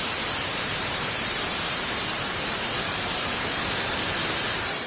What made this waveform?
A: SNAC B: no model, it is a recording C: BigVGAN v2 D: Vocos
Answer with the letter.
C